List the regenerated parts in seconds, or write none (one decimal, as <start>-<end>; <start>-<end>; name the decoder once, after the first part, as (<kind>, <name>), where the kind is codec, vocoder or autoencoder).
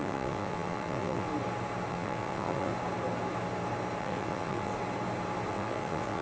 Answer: 0.0-1.3 (vocoder, WaveNeXt); 1.9-2.7; 4.0-4.7; 5.5-6.2